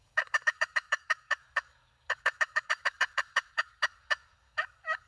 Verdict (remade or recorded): remade